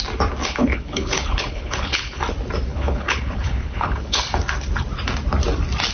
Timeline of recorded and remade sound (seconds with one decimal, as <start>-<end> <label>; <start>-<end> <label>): 0.0-0.4 recorded; 0.4-2.2 remade; 2.2-2.7 recorded; 2.7-4.2 remade; 4.2-5.9 recorded